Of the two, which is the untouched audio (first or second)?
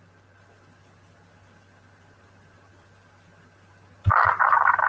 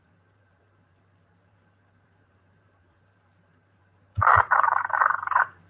first